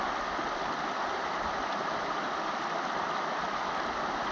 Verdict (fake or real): real